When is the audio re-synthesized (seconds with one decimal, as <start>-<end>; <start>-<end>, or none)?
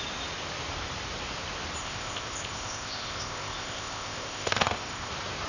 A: 1.8-5.1